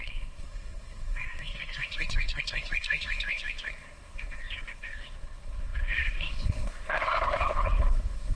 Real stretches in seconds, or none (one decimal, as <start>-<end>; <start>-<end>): none